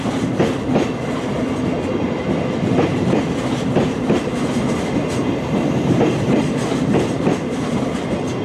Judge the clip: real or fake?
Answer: real